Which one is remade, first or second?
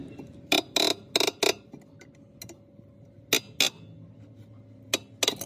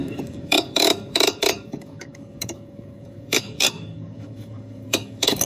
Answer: second